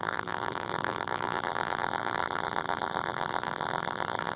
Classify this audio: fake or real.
fake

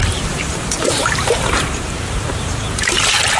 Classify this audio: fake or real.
fake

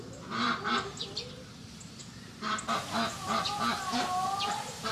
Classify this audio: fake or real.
real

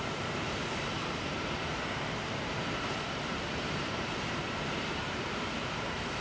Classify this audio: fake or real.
fake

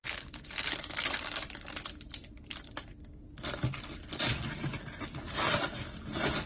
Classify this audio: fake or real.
real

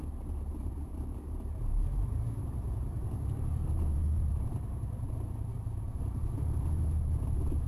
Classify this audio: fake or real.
fake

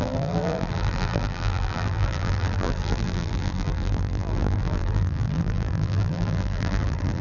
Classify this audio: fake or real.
fake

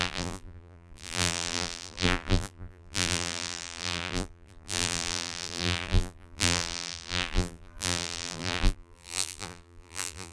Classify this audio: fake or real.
fake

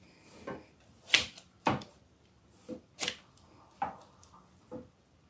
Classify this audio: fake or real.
fake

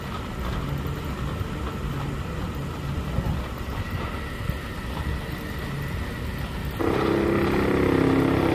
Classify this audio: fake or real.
real